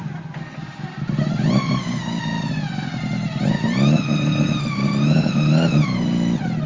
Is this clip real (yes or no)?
yes